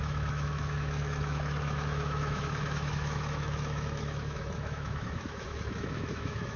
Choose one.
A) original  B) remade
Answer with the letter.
B